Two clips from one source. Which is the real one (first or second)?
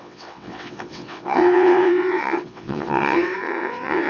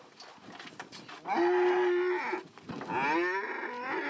second